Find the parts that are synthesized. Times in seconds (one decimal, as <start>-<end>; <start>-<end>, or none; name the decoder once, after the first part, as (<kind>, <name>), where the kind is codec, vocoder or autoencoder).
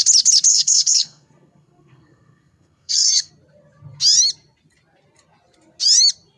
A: 0.5-3.3 (codec, SNAC)